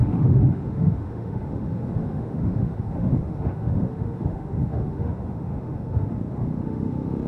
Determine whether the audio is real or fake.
fake